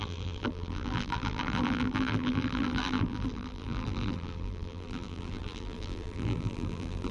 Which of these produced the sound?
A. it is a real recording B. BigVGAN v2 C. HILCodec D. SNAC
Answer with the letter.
B